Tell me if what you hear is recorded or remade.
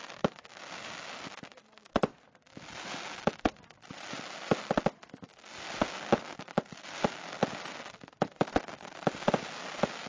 recorded